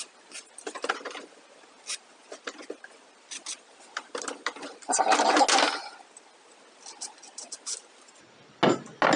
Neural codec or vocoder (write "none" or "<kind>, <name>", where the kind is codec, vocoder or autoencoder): none